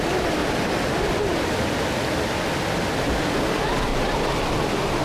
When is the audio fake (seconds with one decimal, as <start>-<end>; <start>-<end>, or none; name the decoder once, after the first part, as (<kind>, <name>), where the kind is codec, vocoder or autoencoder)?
0.0-3.9 (vocoder, BigVGAN v2)